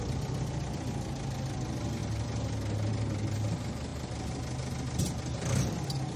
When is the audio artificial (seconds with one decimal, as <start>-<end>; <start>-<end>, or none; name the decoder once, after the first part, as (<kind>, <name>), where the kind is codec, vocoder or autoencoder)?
none